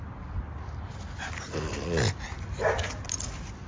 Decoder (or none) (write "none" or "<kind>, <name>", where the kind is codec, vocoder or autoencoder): none